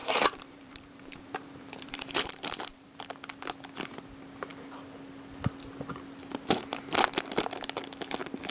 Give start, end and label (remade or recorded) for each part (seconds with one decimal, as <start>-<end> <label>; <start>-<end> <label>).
0.0-3.0 remade; 3.0-8.5 recorded